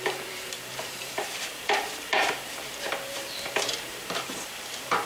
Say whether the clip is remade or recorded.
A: remade